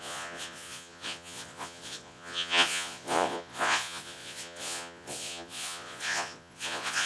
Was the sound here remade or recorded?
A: remade